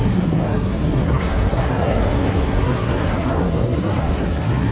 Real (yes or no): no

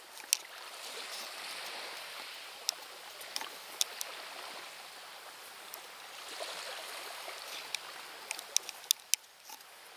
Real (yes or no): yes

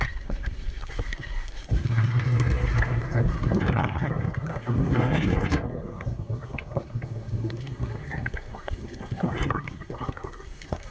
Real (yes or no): no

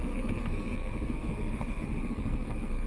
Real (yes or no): no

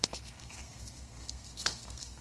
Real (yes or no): no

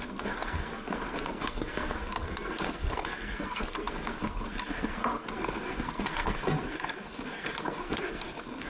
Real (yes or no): no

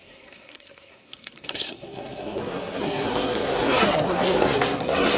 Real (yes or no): no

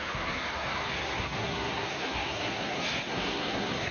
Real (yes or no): no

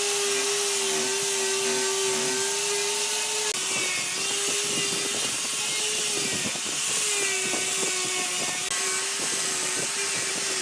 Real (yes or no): yes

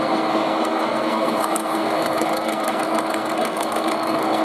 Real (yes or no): no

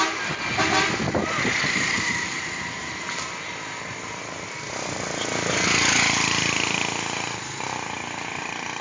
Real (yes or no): yes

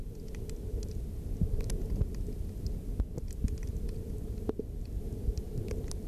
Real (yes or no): yes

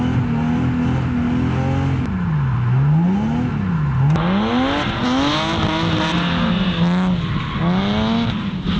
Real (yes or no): yes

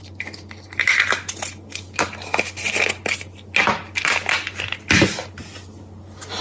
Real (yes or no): yes